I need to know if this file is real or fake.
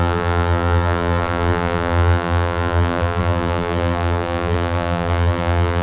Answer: fake